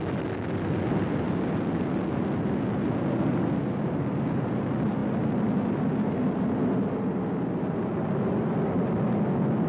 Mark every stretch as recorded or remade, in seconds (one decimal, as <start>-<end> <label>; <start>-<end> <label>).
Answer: 0.0-9.7 recorded